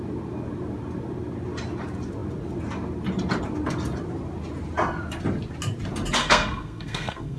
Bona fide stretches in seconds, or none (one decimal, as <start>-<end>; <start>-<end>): 0.0-6.2